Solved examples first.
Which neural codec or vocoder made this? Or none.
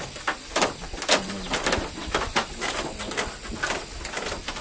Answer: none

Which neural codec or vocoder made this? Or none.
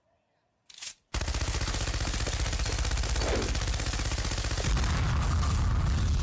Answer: none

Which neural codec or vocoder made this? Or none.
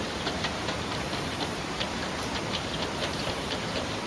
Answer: vocoder, BigVGAN v2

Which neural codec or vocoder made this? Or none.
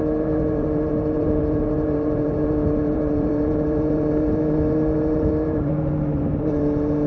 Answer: vocoder, BigVGAN v2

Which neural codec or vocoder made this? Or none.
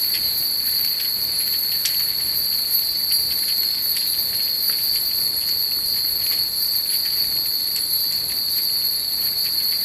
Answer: none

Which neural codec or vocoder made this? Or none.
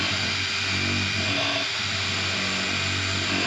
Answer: none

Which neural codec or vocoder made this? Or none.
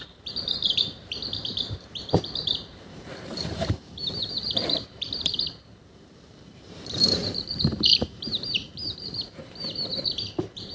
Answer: vocoder, BigVGAN v2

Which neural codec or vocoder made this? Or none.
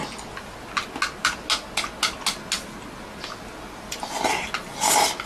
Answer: none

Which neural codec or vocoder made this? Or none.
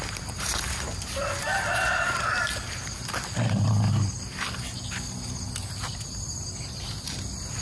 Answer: none